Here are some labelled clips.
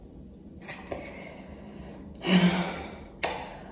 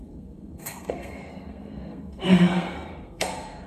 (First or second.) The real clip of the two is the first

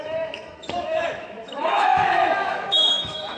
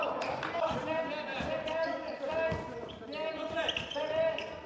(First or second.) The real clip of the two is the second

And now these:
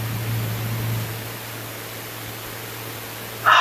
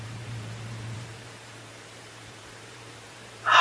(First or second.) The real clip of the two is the first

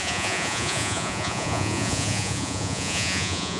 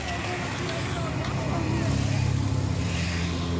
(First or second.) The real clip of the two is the second